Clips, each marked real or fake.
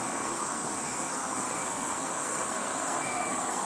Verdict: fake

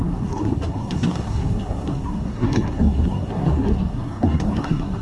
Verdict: fake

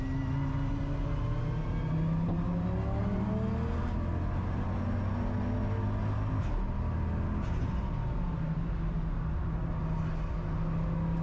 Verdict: real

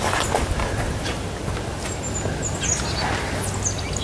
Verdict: real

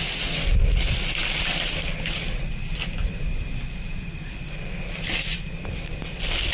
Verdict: real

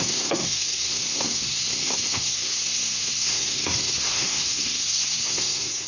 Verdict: fake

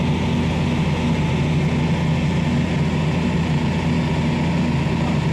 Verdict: real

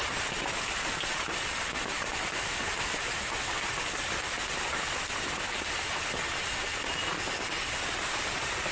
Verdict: real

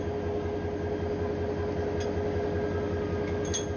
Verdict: real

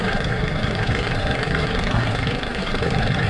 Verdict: fake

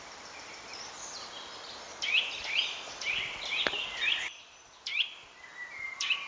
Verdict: real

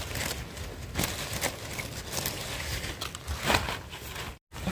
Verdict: real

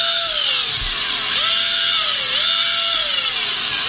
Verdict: real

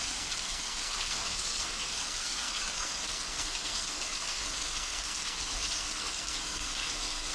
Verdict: fake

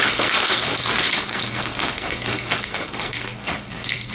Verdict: fake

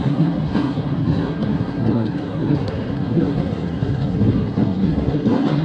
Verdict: fake